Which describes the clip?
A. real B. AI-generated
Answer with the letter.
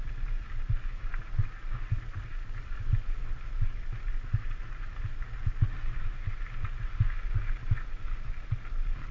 A